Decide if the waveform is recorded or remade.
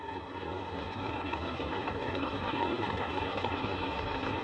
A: remade